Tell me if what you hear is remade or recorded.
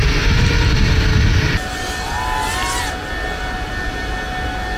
recorded